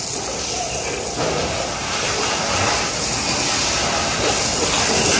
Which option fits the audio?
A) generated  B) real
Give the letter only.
B